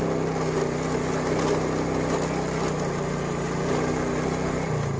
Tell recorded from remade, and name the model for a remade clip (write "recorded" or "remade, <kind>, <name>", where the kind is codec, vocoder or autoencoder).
recorded